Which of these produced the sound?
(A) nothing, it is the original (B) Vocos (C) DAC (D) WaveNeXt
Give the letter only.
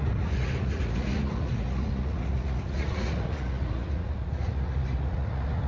B